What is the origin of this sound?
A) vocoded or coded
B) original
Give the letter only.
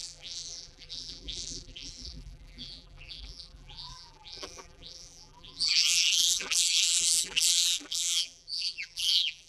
A